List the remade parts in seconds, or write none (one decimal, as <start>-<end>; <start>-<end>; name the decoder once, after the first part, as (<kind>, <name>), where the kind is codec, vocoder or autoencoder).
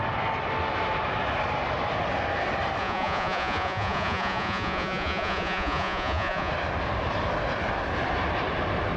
2.8-6.5 (vocoder, Vocos)